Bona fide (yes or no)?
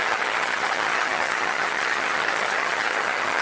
no